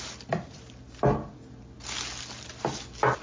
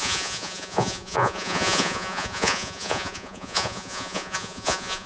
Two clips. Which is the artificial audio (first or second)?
second